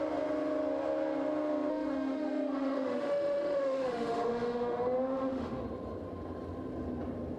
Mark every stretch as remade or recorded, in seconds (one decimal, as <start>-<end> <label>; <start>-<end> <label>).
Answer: 0.0-1.7 recorded; 1.7-5.6 remade; 5.6-7.4 recorded